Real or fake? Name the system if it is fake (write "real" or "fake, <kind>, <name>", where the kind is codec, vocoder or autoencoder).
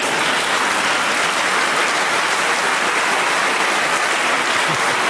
fake, vocoder, BigVGAN v2